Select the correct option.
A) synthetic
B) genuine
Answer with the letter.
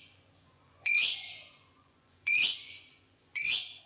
A